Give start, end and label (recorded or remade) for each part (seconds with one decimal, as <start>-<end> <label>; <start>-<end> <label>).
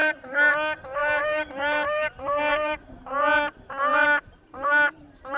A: 0.0-0.5 remade; 0.5-1.0 recorded; 1.0-3.1 remade; 3.1-3.9 recorded; 3.9-5.4 remade